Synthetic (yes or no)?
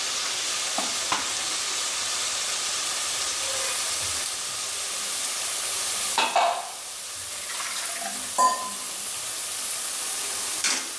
no